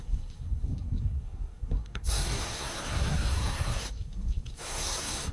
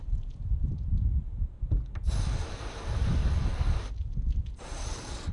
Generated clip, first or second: first